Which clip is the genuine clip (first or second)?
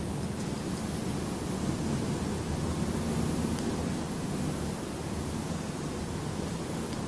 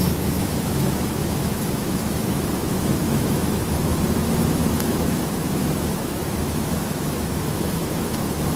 first